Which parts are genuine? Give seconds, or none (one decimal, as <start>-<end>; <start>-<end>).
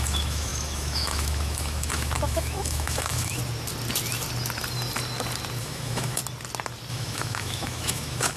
3.4-5.6; 6.2-6.9